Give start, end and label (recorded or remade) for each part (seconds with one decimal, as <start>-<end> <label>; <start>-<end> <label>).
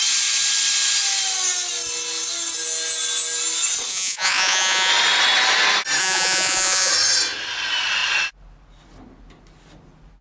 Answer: 0.0-3.9 recorded; 3.9-4.9 remade; 4.9-6.0 recorded; 6.0-6.9 remade; 6.9-10.2 recorded